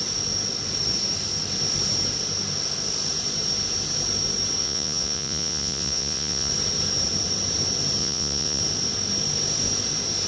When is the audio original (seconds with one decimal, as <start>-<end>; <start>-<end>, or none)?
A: 0.0-4.6; 6.5-8.0; 8.6-10.3